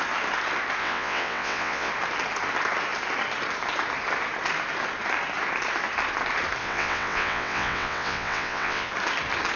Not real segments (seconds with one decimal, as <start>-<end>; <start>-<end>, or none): 0.8-1.9; 6.6-8.9